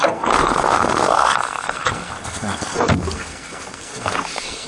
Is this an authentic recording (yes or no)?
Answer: no